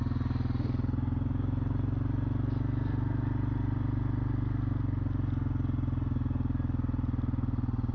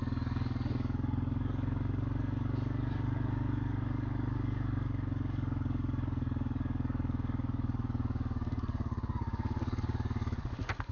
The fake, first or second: second